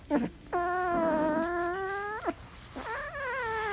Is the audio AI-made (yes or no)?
no